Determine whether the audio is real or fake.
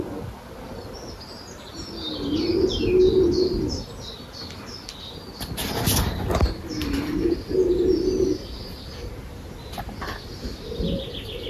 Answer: real